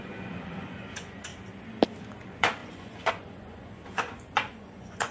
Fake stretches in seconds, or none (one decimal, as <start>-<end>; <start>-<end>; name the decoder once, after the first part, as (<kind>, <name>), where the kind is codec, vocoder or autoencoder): 0.0-1.3 (vocoder, Vocos); 2.0-5.1

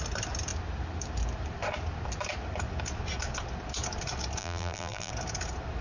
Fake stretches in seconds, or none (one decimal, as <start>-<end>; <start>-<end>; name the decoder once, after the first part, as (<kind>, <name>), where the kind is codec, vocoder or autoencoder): 4.4-5.1 (vocoder, BigVGAN v2)

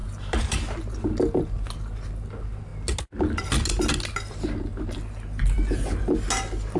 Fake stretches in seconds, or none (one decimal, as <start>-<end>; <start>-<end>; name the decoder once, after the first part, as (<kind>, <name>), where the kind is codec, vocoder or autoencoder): 0.0-0.9 (vocoder, BigVGAN v2)